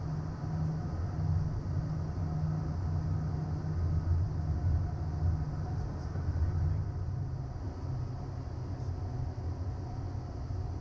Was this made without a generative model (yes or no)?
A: yes